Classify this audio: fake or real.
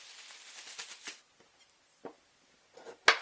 real